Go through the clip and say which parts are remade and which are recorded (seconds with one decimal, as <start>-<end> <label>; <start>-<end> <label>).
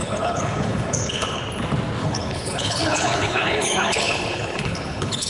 0.0-1.4 remade; 1.4-2.0 recorded; 2.0-5.3 remade